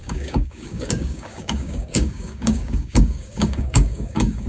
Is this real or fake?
fake